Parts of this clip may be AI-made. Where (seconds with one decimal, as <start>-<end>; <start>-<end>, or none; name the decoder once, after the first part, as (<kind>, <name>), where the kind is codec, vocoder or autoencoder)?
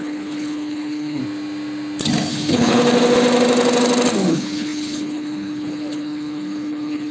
0.0-1.2 (codec, HILCodec); 2.3-2.8; 4.3-7.1